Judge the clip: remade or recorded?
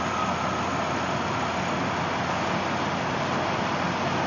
recorded